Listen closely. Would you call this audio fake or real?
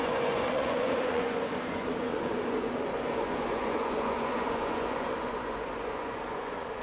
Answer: fake